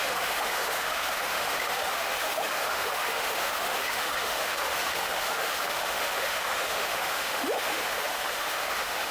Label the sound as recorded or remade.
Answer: remade